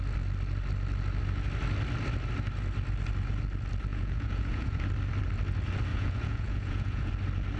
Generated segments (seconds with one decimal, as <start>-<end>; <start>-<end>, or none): 3.9-4.8; 5.9-7.1